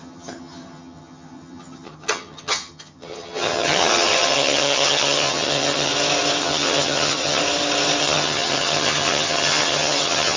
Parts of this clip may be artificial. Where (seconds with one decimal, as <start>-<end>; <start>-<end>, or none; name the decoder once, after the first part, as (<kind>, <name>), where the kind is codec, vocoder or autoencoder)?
0.0-5.9 (vocoder, HiFi-GAN); 6.4-7.4; 8.0-10.4